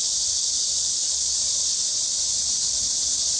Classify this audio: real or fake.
real